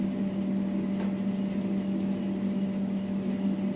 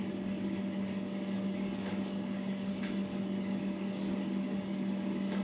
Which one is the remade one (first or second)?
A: second